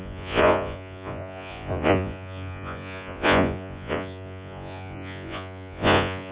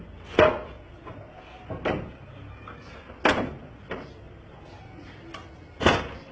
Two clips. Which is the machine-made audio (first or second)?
first